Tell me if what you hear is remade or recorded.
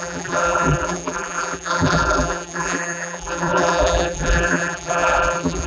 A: remade